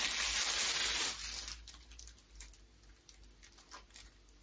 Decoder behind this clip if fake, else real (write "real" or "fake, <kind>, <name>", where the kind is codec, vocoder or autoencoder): real